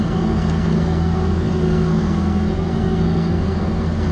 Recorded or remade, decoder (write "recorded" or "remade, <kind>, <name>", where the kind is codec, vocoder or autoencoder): remade, codec, SNAC